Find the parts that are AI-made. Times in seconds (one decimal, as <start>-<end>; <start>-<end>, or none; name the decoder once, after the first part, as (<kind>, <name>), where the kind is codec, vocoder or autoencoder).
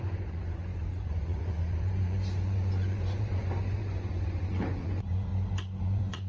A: 0.0-5.3 (vocoder, Vocos); 5.8-6.3